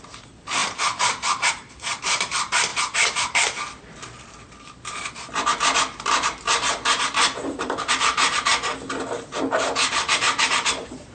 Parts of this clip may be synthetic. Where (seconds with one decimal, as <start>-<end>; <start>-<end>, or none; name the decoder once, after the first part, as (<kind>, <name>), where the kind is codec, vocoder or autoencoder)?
0.0-8.5 (vocoder, BigVGAN v2); 9.9-11.1